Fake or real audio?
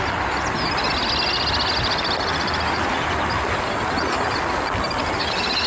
real